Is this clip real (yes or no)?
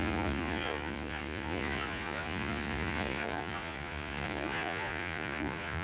no